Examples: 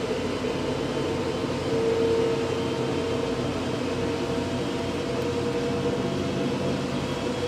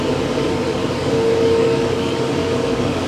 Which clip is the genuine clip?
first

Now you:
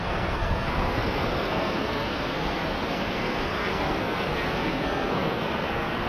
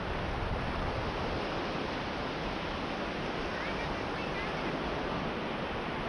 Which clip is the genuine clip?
second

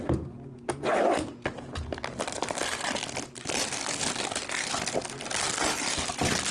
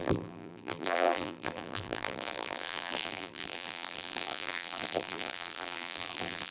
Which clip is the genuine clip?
first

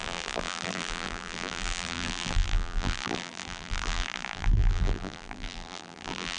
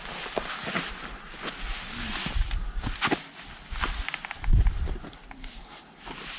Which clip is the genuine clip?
second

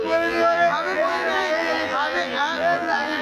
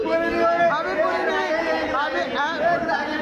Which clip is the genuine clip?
second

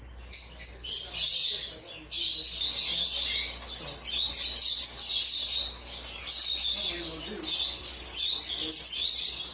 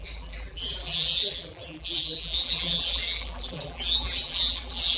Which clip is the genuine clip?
first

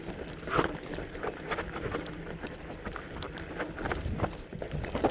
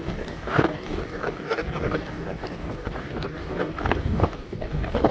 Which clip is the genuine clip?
first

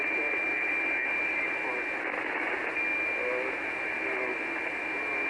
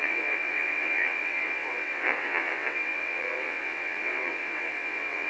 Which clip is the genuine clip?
first